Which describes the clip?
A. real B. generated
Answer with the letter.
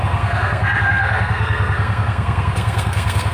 B